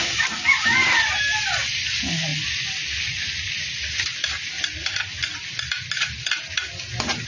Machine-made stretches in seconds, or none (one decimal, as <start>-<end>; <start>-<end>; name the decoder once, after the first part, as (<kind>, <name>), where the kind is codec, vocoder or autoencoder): none